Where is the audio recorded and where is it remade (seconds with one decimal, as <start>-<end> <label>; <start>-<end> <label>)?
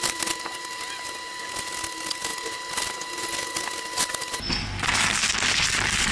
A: 0.0-6.1 recorded